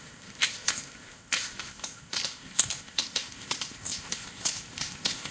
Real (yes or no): no